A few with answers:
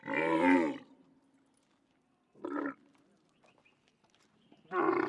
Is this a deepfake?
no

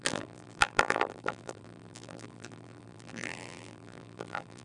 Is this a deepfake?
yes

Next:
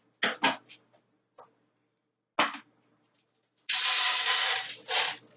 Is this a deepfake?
no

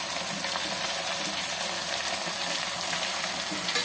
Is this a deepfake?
no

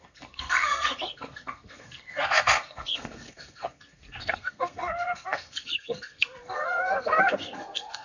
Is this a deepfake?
yes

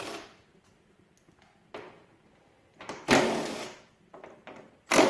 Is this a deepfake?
no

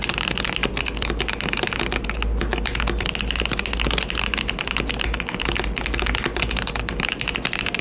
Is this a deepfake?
no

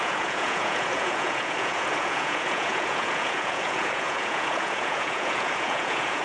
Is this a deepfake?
yes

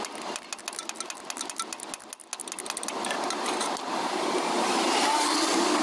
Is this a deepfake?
no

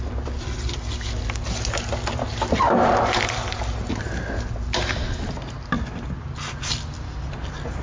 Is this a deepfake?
no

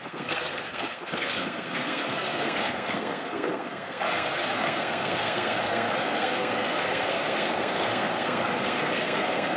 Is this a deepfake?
yes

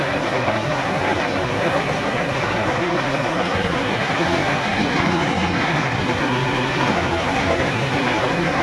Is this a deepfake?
yes